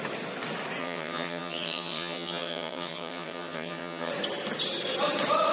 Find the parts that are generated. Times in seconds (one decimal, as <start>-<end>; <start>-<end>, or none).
0.8-4.1